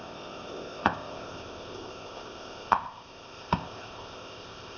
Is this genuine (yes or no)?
no